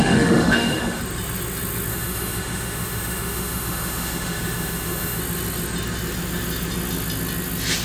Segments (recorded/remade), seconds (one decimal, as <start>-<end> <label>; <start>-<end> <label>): 0.0-1.0 remade; 1.0-1.9 recorded; 1.9-5.2 remade; 5.2-7.8 recorded